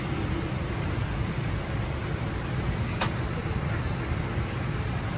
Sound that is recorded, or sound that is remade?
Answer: remade